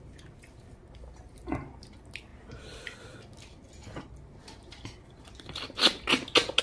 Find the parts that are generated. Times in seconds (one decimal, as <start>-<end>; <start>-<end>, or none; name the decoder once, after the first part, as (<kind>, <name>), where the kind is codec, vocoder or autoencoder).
none